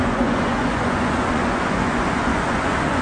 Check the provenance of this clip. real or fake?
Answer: fake